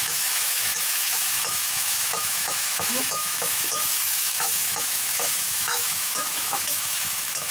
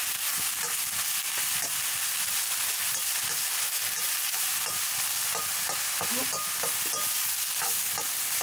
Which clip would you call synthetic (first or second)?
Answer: first